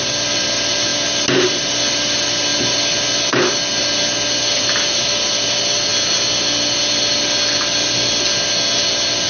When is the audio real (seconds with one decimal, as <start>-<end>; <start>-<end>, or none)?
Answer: 0.0-9.3